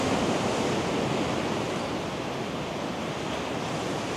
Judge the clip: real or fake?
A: real